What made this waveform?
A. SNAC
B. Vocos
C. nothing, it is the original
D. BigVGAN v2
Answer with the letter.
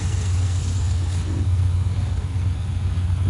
A